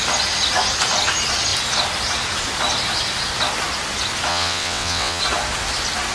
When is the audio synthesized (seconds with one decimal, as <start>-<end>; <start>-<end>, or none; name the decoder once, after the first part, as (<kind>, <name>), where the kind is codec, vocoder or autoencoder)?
4.3-5.2 (vocoder, WaveNeXt)